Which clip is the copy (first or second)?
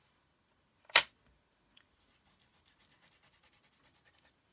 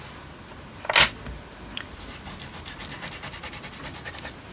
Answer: first